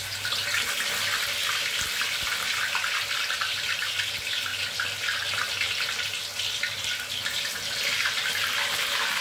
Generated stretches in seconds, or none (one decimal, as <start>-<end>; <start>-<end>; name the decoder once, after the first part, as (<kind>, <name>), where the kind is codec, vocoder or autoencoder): none